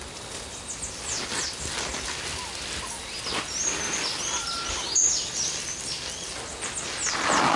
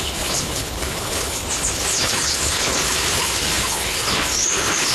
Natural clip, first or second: first